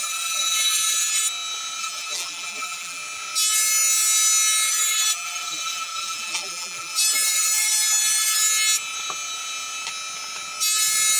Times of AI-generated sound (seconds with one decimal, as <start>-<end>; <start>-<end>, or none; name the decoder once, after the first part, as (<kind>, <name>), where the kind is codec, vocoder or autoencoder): 0.0-1.2 (vocoder, BigVGAN v2); 1.8-3.0; 4.7-8.4